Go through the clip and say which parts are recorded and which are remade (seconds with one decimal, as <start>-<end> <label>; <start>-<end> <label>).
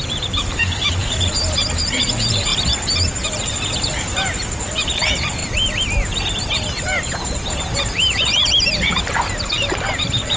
0.0-5.4 remade; 5.4-7.1 recorded; 7.1-10.4 remade